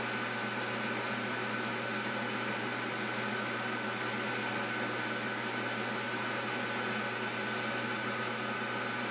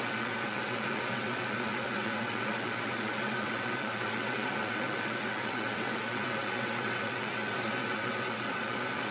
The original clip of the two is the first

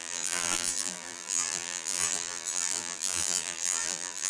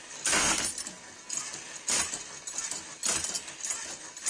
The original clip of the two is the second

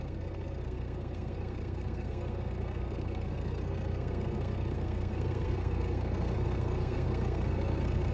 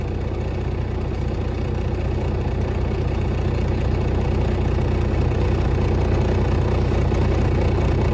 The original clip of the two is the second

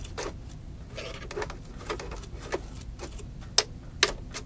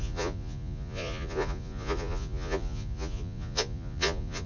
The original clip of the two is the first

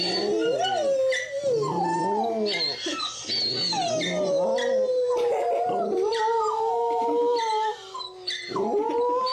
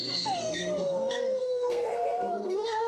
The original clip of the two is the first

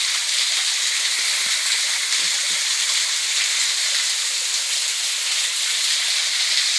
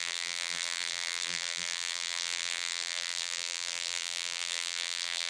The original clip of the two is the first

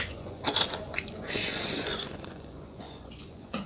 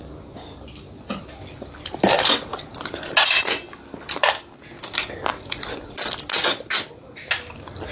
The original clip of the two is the second